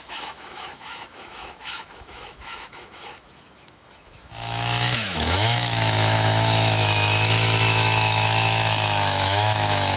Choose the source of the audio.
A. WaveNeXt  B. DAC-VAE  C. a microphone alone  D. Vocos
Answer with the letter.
B